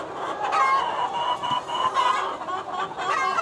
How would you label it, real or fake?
real